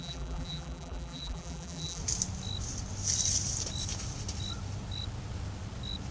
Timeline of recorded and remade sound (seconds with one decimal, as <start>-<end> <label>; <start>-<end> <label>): 0.0-2.0 remade; 2.0-6.1 recorded